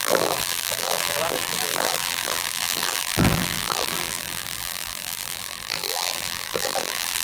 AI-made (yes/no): yes